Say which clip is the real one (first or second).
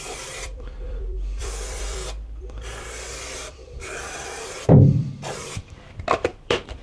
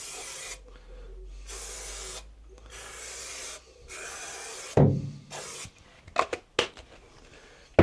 second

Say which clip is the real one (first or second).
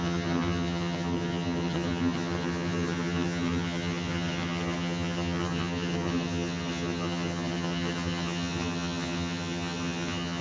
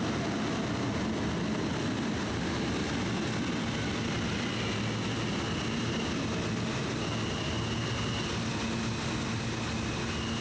second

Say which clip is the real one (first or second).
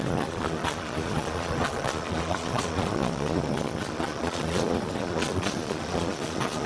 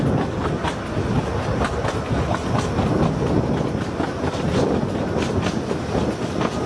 second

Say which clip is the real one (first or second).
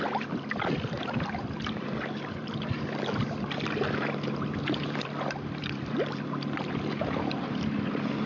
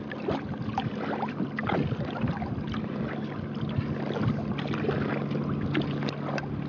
second